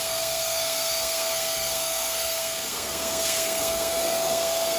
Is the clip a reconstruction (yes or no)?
yes